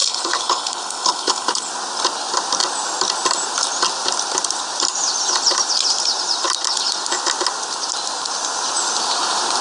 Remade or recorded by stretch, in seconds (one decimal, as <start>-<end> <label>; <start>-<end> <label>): 0.0-1.7 remade; 1.7-9.6 recorded